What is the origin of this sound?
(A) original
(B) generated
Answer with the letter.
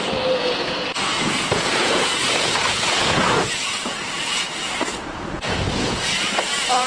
B